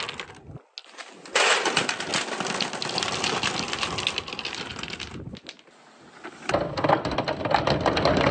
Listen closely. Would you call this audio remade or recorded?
recorded